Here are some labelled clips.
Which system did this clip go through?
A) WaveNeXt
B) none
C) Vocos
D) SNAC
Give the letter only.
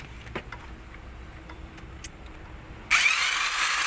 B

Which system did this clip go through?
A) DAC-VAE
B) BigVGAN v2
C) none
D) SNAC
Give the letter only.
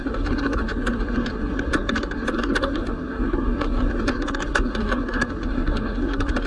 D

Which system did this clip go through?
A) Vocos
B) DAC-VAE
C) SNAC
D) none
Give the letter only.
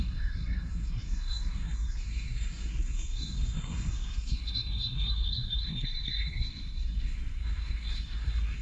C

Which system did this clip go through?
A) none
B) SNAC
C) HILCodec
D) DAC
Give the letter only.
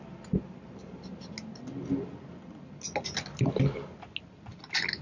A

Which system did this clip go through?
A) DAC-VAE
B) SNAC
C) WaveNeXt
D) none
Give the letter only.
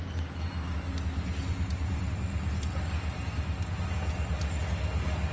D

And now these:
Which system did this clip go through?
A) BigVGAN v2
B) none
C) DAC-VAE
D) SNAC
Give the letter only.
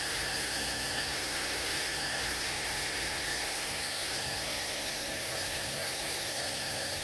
D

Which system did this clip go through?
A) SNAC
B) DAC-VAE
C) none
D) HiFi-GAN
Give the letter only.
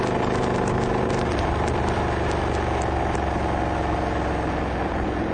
C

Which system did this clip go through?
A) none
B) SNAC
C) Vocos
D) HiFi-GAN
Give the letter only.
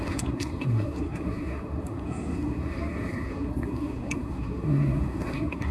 B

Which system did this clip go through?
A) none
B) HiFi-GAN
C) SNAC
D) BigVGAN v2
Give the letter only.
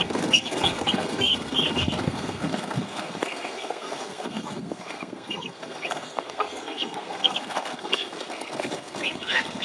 C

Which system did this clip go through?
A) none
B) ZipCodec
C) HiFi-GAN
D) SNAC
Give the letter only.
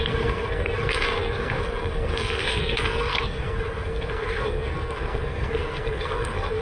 D